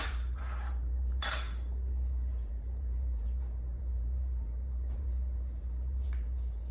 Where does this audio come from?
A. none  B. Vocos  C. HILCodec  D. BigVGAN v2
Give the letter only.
D